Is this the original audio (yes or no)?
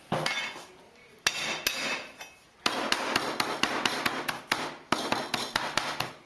yes